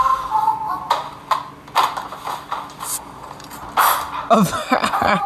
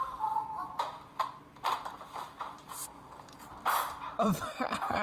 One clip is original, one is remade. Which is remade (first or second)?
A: second